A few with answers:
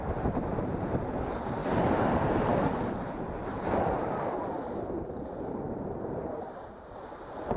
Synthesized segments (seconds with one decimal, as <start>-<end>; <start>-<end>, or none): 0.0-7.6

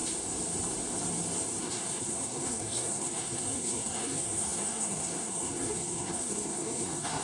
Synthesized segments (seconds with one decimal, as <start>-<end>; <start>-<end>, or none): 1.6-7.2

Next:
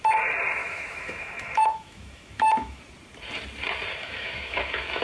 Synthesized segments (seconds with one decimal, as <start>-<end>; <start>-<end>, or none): 0.6-2.8; 4.0-5.0